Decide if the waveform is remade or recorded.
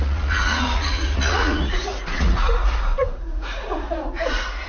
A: remade